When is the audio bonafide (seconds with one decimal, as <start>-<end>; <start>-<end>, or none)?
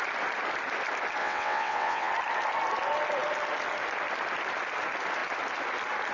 0.0-1.2; 2.1-6.1